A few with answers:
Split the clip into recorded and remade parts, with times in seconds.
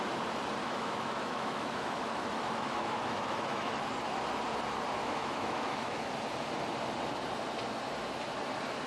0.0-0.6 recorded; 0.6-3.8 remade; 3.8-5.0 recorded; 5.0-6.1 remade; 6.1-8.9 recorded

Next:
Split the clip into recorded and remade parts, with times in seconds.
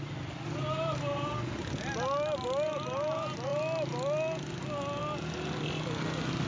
0.0-6.5 recorded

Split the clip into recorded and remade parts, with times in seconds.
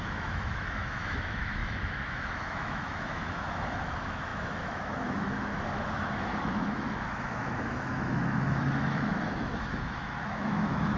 0.0-11.0 remade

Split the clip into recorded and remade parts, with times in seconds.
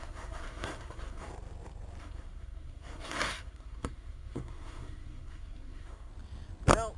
0.0-1.3 remade; 1.3-2.0 recorded; 2.0-6.1 remade; 6.1-7.0 recorded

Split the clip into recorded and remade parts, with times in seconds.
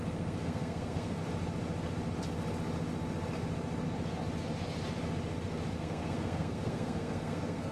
0.0-1.2 remade; 1.2-5.8 recorded; 5.8-7.7 remade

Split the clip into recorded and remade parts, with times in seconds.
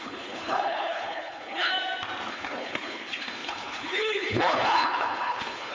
0.0-1.7 remade; 1.7-2.3 recorded; 2.3-5.7 remade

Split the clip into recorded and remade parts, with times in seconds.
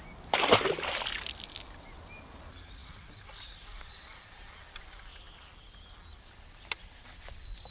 0.0-7.7 recorded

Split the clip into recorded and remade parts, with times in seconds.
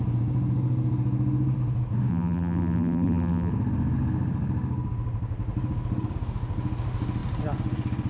0.0-2.1 recorded; 2.1-3.5 remade; 3.5-8.1 recorded